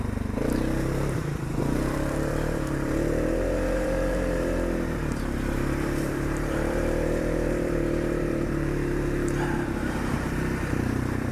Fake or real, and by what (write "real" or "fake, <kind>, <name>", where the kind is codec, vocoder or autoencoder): fake, vocoder, BigVGAN v2